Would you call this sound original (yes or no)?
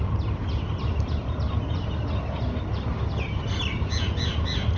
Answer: yes